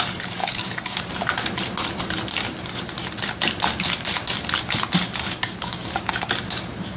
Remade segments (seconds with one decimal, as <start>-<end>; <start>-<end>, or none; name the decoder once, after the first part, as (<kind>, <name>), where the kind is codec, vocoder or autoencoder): 0.4-1.0 (codec, DAC); 5.2-6.3